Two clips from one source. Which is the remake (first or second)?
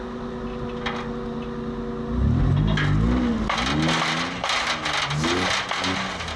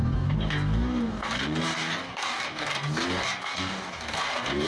second